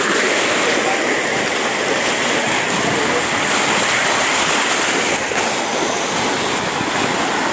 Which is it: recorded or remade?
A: recorded